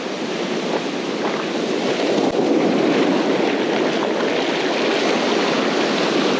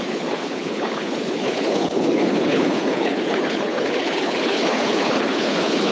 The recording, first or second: first